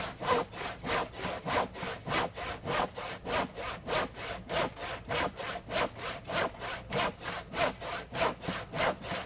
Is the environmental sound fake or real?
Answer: real